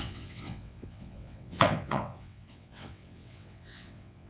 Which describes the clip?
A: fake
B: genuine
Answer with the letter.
A